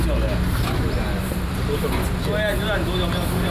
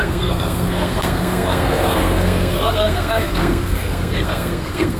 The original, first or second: first